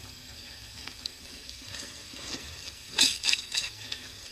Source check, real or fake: fake